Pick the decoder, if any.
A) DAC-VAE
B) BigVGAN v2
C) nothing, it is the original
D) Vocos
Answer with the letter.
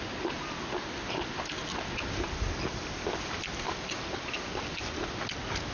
C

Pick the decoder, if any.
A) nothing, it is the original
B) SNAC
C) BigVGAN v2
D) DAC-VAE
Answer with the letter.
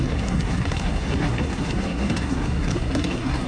B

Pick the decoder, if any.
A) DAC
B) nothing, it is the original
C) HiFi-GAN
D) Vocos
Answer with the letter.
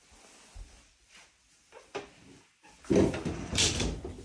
B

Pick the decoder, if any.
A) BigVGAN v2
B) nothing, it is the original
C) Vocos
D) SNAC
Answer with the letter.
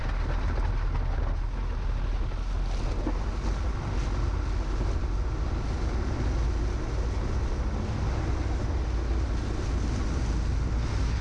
B